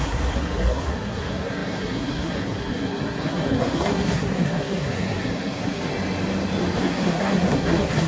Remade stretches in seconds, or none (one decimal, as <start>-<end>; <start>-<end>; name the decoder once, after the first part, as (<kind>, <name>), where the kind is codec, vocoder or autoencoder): 0.0-5.9 (codec, SNAC); 6.8-8.1

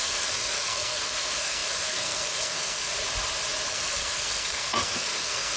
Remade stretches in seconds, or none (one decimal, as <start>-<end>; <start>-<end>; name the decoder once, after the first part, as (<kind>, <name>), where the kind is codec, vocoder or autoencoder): 0.0-2.9 (codec, SNAC); 3.7-5.6

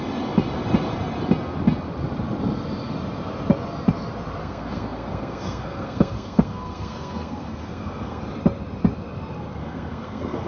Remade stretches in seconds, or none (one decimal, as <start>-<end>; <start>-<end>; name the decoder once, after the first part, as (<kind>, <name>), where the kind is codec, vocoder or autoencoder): 4.4-8.2 (codec, SNAC); 9.6-10.5

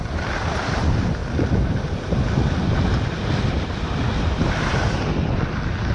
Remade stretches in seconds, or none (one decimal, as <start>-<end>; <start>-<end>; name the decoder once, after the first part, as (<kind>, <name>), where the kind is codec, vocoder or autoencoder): none

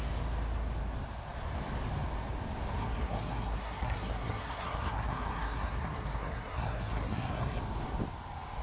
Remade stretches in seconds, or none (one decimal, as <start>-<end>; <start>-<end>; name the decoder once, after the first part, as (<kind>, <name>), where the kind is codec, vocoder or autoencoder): 2.8-7.6 (codec, SNAC)

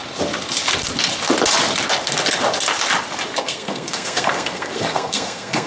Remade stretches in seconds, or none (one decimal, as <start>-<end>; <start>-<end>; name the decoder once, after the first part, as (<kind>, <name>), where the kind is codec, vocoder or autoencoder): 3.4-5.7 (codec, SNAC)